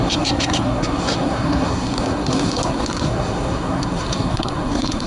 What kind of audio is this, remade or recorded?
remade